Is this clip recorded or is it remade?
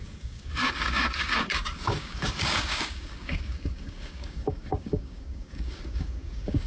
remade